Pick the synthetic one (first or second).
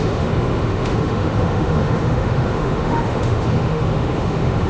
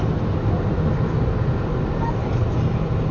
first